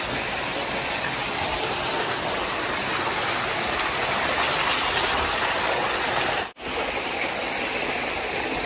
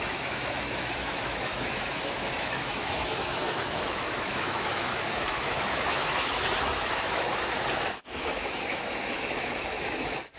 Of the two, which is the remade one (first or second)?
second